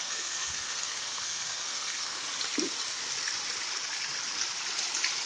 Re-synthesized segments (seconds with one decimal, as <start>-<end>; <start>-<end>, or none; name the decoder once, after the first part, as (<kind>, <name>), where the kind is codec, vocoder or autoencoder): 0.0-2.2 (codec, SNAC)

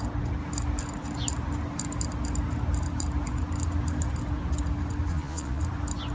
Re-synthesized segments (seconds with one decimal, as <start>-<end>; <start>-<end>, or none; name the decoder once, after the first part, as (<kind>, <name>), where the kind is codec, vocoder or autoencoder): 5.1-5.6 (vocoder, Vocos)

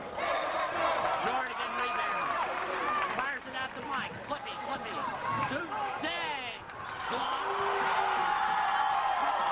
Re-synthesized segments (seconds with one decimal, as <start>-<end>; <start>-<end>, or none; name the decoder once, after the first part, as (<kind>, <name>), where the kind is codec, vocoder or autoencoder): none

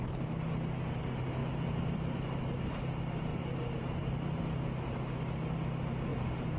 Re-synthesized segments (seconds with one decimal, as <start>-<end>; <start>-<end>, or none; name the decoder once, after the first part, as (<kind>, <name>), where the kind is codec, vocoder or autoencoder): 1.4-2.9 (vocoder, BigVGAN v2); 3.3-4.4; 6.1-6.6

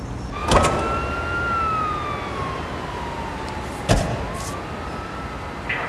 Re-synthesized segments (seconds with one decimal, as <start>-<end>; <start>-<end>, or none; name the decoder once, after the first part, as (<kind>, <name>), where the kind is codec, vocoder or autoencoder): none